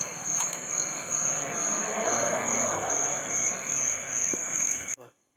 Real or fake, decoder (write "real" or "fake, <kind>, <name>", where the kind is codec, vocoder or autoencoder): fake, codec, SNAC